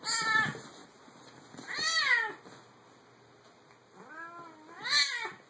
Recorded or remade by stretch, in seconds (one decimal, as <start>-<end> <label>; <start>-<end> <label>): 0.0-5.5 recorded